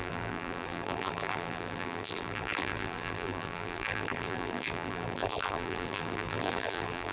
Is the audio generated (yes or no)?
yes